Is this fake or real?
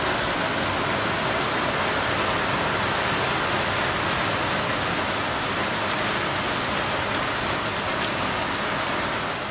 real